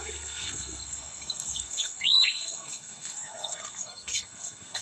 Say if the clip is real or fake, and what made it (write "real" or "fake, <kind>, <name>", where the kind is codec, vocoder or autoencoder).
fake, codec, SNAC